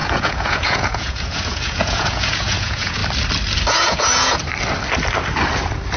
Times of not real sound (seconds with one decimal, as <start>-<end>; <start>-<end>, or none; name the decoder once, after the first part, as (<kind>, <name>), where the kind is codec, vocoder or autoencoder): 0.0-3.0 (vocoder, Vocos); 3.7-4.4